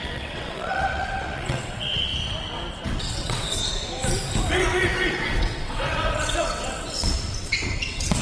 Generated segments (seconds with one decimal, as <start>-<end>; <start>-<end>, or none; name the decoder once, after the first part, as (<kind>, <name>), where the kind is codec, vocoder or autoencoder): 0.0-2.1 (vocoder, WaveNeXt); 2.7-3.6; 4.5-8.2